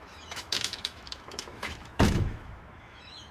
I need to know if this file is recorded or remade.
remade